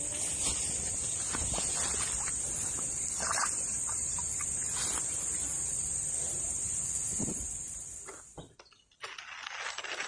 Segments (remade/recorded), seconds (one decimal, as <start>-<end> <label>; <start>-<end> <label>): 0.0-10.1 recorded